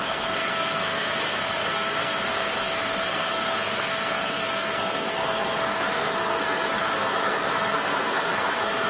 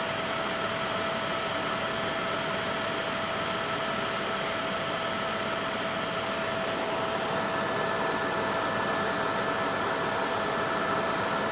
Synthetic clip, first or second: first